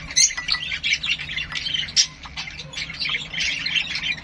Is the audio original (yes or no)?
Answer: yes